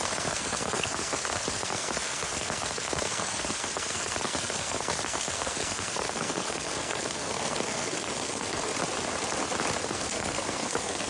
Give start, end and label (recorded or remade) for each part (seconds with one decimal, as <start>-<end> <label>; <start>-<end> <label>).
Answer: 0.0-8.7 remade; 8.7-9.8 recorded; 9.8-11.1 remade